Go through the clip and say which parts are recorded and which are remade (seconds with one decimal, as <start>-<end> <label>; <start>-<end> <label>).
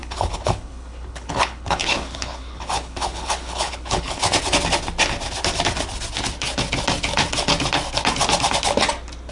0.0-4.2 remade; 4.2-9.3 recorded